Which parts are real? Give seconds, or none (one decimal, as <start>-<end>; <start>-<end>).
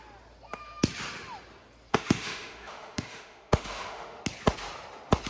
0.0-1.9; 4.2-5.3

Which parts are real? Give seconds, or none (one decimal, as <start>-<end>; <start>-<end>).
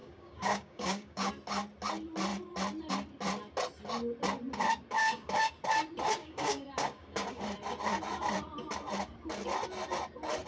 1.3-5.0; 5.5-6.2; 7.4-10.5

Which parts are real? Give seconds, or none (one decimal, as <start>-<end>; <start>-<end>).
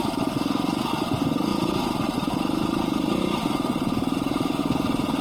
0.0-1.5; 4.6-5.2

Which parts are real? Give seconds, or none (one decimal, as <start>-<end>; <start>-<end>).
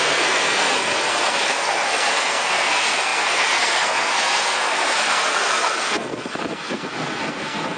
none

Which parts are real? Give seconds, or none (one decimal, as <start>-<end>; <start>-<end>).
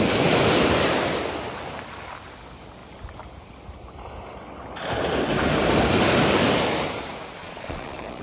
0.0-7.4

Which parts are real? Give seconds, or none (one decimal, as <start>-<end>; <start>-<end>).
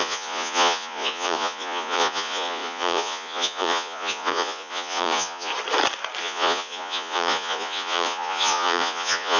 5.5-6.2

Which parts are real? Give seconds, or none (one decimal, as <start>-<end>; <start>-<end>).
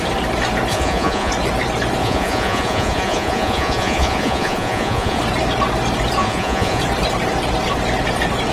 0.0-0.7; 1.3-2.0; 5.2-6.2; 6.8-8.5